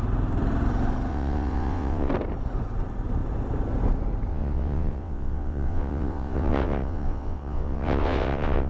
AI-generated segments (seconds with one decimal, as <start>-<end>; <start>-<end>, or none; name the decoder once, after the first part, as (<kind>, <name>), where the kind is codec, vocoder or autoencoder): 1.1-2.1 (vocoder, WaveNeXt); 4.3-8.7